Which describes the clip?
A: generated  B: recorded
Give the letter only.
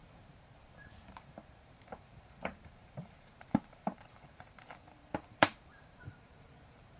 A